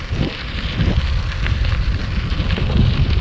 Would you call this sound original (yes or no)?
yes